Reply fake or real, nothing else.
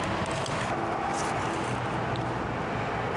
real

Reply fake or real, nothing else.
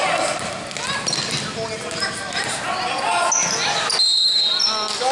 real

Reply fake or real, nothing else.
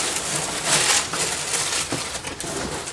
real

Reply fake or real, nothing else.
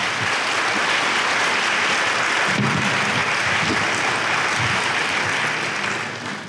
real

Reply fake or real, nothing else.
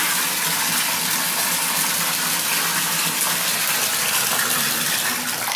fake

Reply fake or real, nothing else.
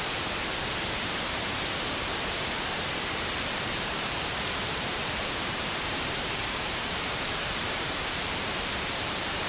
fake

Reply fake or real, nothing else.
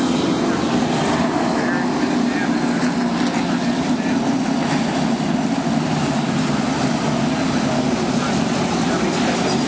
real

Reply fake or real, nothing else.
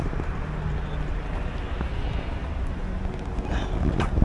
real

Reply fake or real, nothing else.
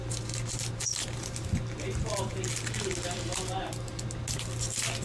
real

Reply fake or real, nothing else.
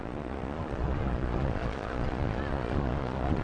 fake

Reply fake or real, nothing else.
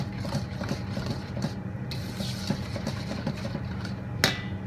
real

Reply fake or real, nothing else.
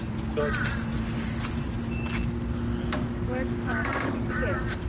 real